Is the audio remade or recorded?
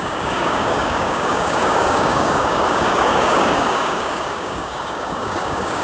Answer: remade